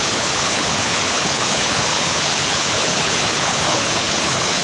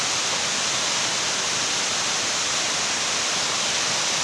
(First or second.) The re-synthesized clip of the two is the first